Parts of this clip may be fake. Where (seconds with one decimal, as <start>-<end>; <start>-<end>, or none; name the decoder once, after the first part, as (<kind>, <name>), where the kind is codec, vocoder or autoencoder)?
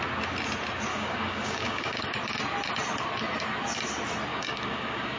0.9-2.1 (codec, DAC); 4.3-5.2